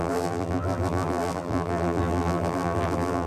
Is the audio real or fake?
fake